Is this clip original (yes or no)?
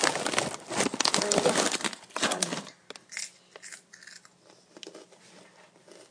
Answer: yes